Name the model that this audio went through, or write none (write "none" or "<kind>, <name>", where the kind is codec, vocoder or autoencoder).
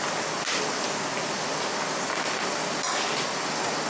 none